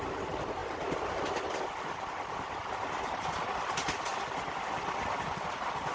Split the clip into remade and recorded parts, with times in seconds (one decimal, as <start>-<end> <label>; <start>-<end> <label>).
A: 0.0-4.1 recorded; 4.1-5.0 remade; 5.0-5.9 recorded